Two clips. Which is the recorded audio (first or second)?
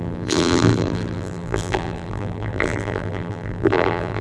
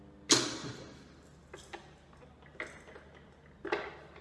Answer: second